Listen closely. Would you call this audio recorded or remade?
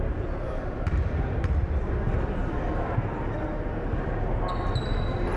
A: recorded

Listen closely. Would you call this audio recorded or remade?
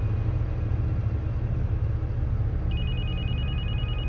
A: recorded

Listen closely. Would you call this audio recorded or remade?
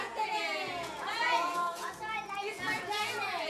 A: remade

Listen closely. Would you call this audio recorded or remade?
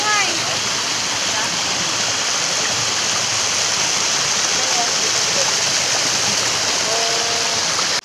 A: recorded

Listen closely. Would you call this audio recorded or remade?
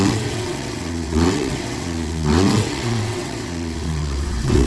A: remade